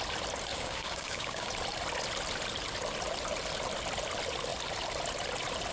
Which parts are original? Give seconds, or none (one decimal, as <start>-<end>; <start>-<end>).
0.0-0.5; 1.5-5.7